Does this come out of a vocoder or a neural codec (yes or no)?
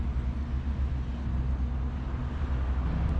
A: no